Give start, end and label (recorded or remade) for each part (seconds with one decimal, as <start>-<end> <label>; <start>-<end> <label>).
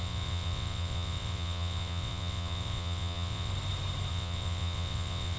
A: 0.0-3.5 remade; 3.5-4.1 recorded; 4.1-5.4 remade